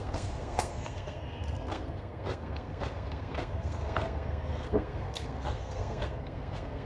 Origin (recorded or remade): remade